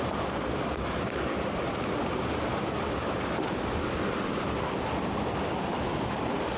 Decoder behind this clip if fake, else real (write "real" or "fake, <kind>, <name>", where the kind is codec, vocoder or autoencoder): real